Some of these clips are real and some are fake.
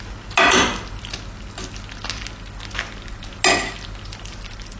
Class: real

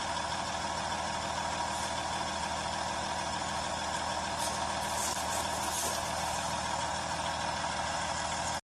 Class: real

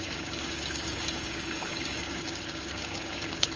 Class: fake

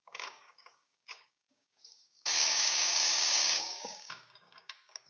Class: fake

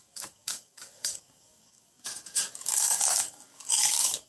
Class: fake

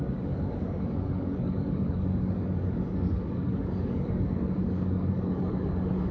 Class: fake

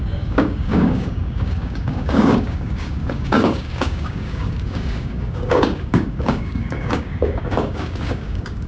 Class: fake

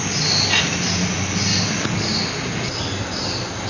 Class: real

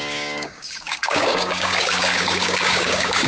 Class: fake